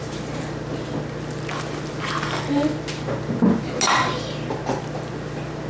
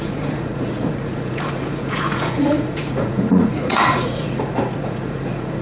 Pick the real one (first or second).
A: first